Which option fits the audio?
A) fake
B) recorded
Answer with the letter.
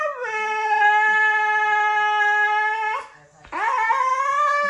B